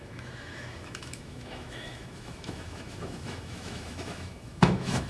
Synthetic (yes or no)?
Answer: yes